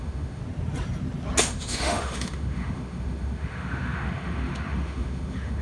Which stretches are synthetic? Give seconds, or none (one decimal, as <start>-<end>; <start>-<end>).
0.0-0.4; 1.4-5.6

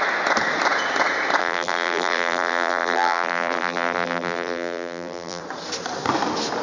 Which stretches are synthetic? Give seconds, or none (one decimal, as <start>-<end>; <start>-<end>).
1.4-5.4

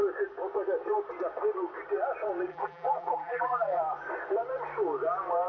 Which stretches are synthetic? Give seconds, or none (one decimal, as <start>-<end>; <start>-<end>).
2.5-3.8

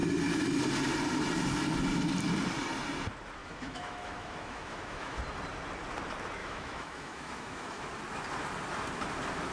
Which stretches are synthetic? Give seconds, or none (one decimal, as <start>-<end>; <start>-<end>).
3.4-5.2; 6.4-7.8

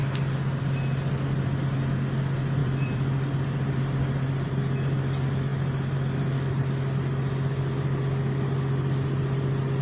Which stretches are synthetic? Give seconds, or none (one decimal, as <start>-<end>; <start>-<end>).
2.6-4.5

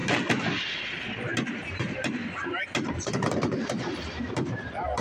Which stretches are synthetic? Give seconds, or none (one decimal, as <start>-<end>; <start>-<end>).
1.7-2.2; 3.1-5.0